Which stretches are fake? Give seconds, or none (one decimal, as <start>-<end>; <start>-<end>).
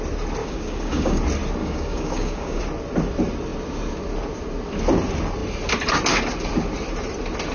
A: 0.4-1.2; 1.6-2.6